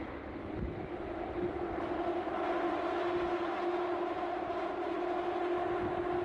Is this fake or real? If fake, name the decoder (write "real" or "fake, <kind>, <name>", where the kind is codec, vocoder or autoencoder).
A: real